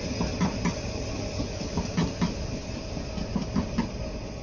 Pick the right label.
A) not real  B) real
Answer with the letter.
B